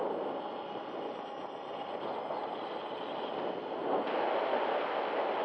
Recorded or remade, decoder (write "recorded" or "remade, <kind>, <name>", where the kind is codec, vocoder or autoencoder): recorded